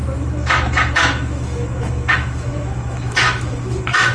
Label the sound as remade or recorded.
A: remade